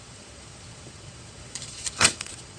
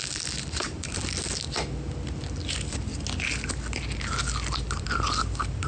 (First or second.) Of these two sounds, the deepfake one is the first